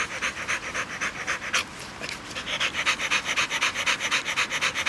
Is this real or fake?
real